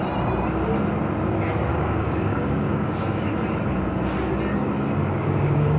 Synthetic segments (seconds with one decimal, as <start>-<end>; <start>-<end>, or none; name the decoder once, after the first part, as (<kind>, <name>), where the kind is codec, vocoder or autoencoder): 1.7-3.3 (codec, DAC); 5.0-5.8